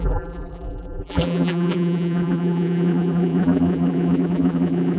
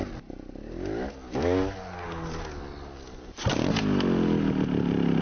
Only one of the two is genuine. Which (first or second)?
second